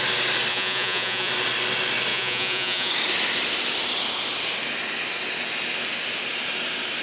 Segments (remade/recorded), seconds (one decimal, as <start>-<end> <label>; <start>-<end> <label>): 0.0-0.5 recorded; 0.5-1.3 remade; 1.3-2.1 recorded; 2.1-2.9 remade; 2.9-7.0 recorded